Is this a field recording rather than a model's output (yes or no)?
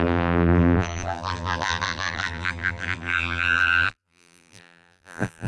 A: no